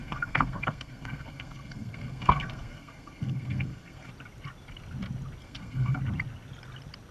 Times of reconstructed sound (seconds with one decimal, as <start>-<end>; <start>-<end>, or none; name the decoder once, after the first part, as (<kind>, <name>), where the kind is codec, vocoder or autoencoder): 0.0-4.1 (codec, SNAC); 5.4-6.0